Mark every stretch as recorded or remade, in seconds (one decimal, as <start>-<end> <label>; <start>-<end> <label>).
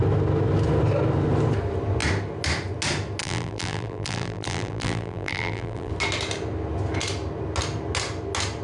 0.0-3.2 recorded; 3.2-5.9 remade; 5.9-8.6 recorded